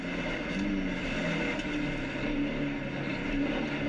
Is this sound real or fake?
real